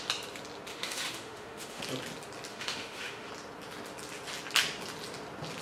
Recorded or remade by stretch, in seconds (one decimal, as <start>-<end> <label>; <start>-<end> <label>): 0.0-0.7 recorded; 0.7-1.8 remade; 1.8-2.5 recorded; 2.5-3.3 remade; 3.3-5.6 recorded